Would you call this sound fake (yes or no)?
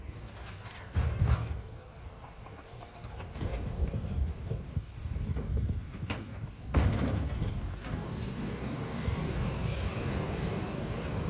yes